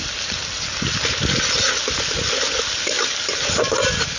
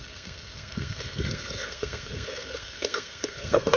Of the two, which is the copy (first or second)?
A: second